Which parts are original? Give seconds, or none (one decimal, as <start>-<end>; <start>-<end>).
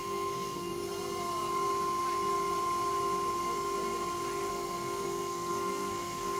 0.7-4.5